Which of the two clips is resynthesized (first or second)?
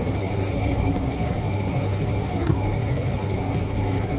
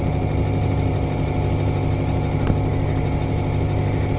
first